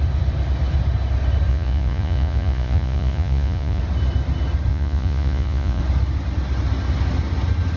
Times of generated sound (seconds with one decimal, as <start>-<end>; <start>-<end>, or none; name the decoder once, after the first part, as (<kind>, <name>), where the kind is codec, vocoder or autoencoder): 1.5-3.8 (vocoder, Vocos); 4.7-5.8